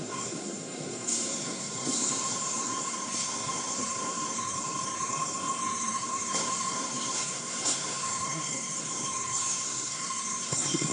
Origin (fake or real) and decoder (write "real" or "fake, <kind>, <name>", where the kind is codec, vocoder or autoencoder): fake, codec, SNAC